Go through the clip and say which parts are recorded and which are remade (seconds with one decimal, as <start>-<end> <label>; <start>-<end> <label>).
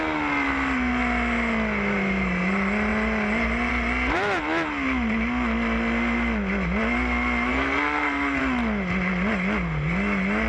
0.0-7.5 recorded; 7.5-8.4 remade; 8.4-10.5 recorded